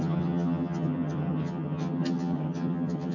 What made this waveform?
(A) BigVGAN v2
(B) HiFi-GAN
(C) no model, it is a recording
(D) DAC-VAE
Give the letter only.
B